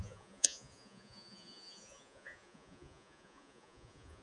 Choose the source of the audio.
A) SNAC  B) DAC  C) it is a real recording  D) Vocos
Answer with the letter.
D